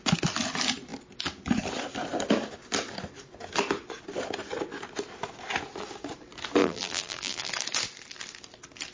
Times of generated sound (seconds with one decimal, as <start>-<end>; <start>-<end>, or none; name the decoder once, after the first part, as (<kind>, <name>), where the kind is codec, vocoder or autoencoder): 6.6-7.5 (vocoder, BigVGAN v2)